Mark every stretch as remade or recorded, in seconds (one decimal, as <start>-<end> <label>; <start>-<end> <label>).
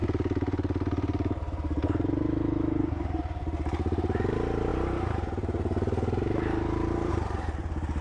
0.0-8.0 remade